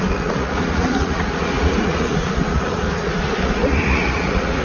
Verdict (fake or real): fake